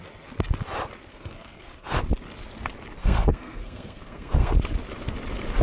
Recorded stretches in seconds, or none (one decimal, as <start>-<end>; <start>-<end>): 0.0-1.1; 2.0-3.0; 4.5-5.6